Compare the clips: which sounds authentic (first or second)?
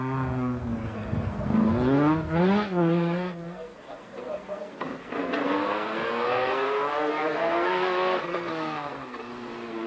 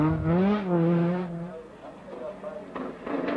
second